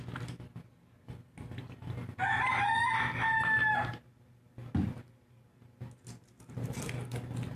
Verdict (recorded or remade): recorded